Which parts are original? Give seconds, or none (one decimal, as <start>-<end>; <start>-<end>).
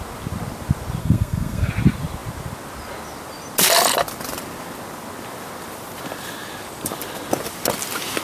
0.0-1.0; 1.7-8.2